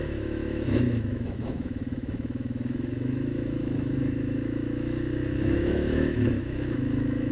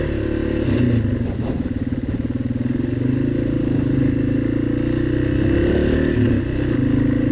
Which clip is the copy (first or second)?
first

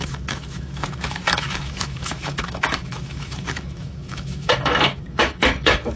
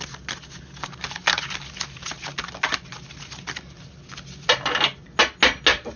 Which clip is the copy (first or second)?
first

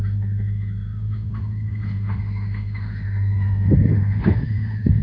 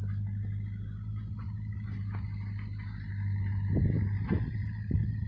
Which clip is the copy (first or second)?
first